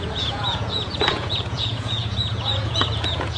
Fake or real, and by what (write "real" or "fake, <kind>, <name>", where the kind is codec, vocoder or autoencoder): fake, vocoder, Vocos